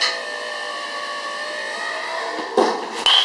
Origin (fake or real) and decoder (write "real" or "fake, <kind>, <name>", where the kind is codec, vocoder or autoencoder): real